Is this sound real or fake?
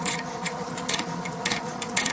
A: fake